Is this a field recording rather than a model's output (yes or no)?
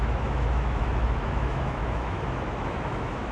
no